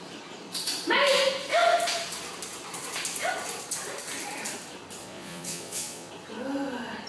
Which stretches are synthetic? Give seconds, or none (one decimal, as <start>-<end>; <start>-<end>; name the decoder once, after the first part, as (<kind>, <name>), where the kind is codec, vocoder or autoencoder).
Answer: 5.0-6.1 (vocoder, Vocos)